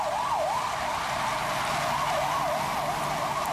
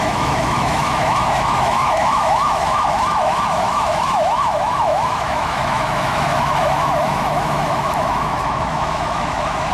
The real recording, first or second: first